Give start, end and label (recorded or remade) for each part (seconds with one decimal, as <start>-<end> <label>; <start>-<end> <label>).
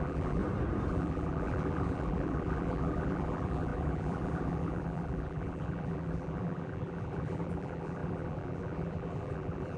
0.0-0.4 remade; 0.4-0.9 recorded; 0.9-9.8 remade